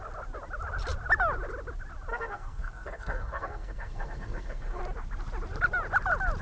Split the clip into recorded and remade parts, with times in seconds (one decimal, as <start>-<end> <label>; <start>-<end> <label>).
0.0-2.1 recorded; 2.1-4.8 remade; 4.8-6.4 recorded